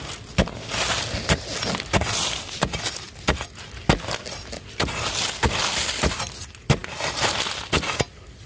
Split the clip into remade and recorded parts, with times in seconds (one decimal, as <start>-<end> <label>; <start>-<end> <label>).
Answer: 0.0-8.5 recorded